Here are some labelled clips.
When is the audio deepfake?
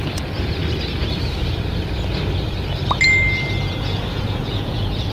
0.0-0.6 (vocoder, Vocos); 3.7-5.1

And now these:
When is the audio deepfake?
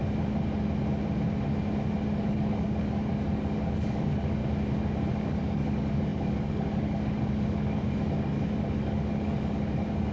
2.2-4.4 (codec, DAC); 5.1-10.1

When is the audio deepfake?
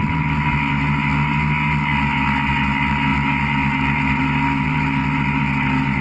none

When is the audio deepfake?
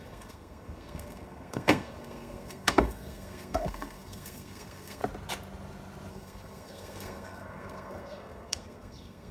0.0-5.0 (codec, SNAC); 6.1-9.3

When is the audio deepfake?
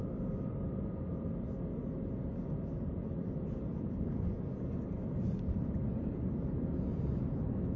0.0-1.1 (vocoder, BigVGAN v2); 3.6-7.8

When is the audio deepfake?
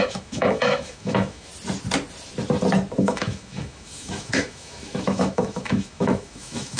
0.0-1.5 (autoencoder, DAC-VAE); 3.0-6.8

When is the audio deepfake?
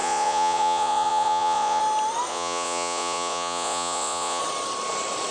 0.0-1.8 (vocoder, Vocos); 2.3-4.4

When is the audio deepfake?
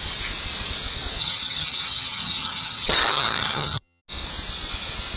1.2-4.0 (vocoder, HiFi-GAN)